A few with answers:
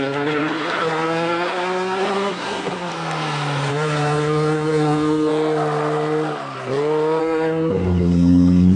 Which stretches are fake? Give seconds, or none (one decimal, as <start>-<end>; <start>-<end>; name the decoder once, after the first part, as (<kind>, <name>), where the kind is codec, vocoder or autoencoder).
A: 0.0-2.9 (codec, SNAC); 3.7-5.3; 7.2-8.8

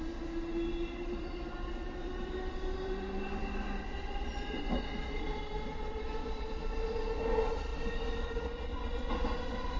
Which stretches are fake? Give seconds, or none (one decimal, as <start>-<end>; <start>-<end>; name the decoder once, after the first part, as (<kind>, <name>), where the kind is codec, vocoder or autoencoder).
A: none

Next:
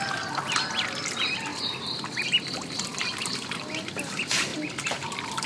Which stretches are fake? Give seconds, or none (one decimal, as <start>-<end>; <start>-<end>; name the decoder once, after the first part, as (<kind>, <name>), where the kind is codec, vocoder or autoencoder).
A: none

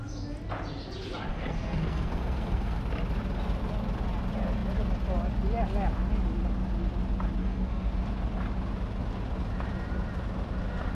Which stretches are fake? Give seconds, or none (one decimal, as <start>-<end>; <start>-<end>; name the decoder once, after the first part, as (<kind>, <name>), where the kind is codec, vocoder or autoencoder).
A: 1.3-2.8 (codec, SNAC); 7.4-7.9

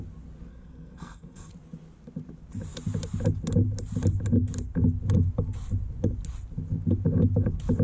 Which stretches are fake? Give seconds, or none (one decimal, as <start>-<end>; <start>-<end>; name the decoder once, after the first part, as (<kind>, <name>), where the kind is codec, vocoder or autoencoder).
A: 0.5-1.5 (codec, SNAC)

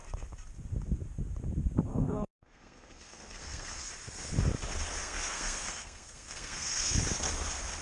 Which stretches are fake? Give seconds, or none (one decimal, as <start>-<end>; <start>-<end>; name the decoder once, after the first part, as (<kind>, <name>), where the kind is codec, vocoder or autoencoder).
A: 1.9-3.9 (codec, SNAC); 5.0-7.0

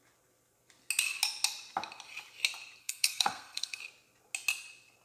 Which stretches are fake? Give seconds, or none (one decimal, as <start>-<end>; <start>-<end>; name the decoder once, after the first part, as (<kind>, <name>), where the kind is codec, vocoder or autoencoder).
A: 2.8-3.8 (codec, SNAC)

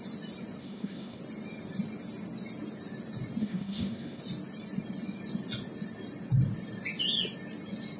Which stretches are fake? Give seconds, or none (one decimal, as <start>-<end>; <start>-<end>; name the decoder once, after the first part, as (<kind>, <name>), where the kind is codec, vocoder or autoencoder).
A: 0.6-1.2 (codec, SNAC); 3.4-4.2